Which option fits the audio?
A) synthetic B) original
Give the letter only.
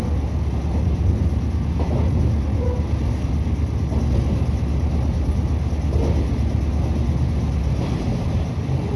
B